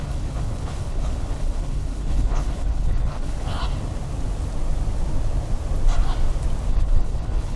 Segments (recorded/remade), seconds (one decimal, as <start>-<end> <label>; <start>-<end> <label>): 0.0-3.6 remade; 3.6-6.7 recorded; 6.7-7.6 remade